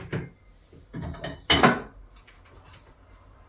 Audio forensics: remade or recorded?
recorded